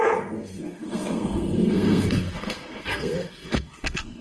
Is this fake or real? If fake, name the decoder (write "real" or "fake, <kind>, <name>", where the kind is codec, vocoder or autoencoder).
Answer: fake, codec, SNAC